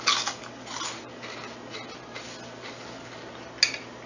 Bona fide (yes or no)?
yes